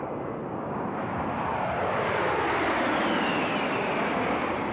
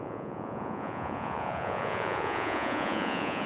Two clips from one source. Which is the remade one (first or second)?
second